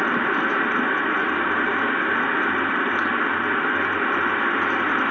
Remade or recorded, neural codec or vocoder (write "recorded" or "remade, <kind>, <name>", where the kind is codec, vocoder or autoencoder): recorded